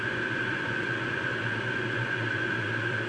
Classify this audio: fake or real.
fake